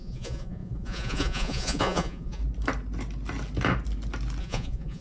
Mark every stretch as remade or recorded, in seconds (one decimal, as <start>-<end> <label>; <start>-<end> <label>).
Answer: 0.0-2.4 remade; 2.4-4.4 recorded; 4.4-5.0 remade